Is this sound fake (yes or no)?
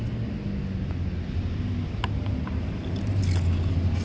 no